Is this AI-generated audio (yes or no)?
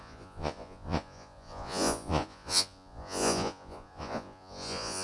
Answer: yes